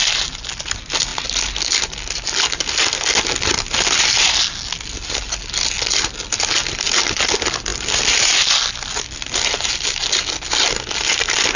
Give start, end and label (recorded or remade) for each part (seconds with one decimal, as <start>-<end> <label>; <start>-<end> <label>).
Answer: 0.0-11.6 recorded